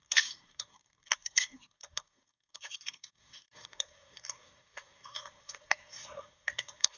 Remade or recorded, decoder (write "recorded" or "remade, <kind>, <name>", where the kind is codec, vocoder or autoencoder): remade, codec, SNAC